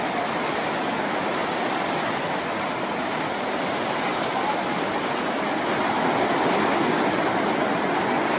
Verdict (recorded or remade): recorded